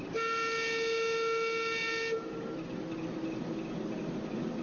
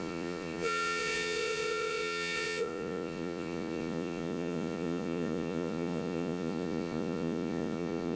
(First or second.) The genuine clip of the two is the first